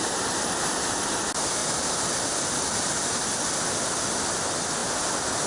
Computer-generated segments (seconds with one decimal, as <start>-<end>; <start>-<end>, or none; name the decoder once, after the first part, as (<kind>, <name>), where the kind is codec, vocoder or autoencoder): 1.6-2.3 (vocoder, BigVGAN v2)